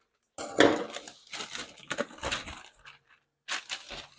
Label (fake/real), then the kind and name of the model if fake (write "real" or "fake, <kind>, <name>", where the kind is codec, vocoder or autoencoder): real